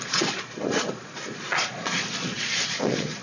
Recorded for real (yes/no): no